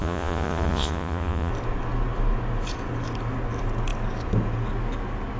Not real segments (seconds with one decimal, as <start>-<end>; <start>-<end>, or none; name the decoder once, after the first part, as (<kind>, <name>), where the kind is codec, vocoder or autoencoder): 0.0-1.5 (vocoder, Vocos)